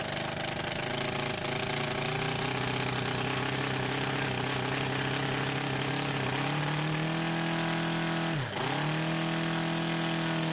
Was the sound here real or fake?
real